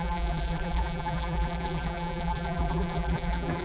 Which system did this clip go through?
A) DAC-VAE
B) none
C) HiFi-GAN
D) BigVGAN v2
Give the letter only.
D